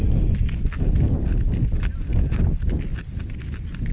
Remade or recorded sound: recorded